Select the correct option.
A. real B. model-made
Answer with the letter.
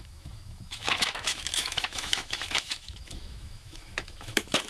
B